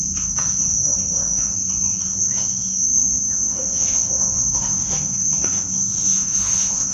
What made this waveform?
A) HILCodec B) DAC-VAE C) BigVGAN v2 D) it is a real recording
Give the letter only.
B